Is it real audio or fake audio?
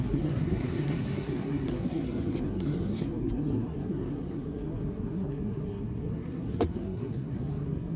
fake